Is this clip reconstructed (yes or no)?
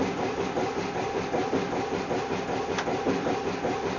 no